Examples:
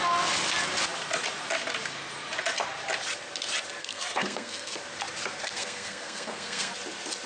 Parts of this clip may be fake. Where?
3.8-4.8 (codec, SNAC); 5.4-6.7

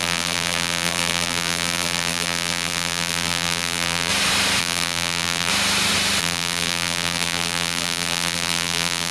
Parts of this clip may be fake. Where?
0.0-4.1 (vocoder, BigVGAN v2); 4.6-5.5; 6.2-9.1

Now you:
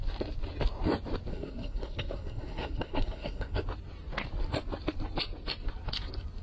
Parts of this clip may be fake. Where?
1.3-3.6 (codec, SNAC)